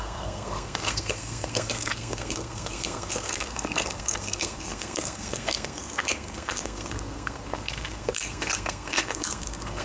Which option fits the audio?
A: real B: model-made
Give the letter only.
B